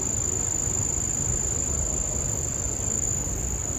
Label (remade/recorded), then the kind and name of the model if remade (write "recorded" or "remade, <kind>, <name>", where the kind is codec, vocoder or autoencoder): recorded